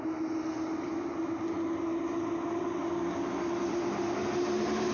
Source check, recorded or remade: recorded